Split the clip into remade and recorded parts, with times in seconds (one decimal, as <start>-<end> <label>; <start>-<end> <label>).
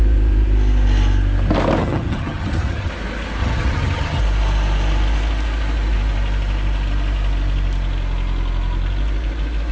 0.0-1.8 recorded; 1.8-2.9 remade; 2.9-3.4 recorded; 3.4-4.2 remade; 4.2-9.7 recorded